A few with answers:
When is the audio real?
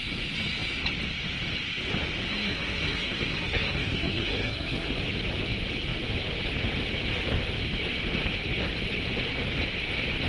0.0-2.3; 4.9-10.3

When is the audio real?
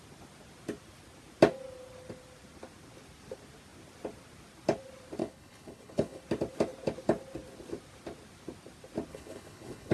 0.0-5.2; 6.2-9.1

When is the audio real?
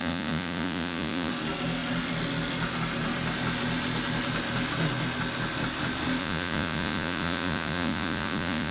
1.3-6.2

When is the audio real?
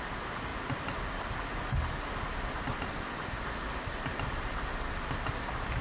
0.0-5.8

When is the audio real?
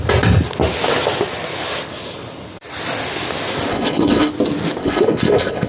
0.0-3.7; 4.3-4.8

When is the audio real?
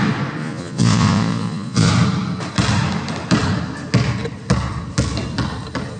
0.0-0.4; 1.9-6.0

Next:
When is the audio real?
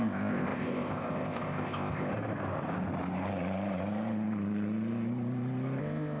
2.1-5.8